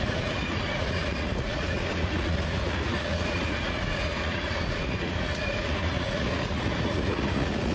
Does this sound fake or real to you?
fake